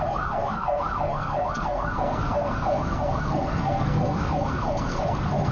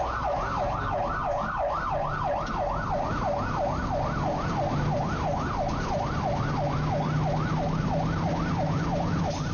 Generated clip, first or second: first